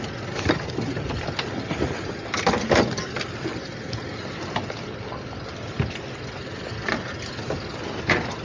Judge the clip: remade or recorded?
recorded